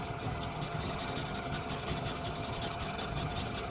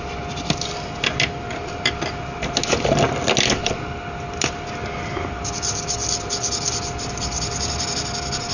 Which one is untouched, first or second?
second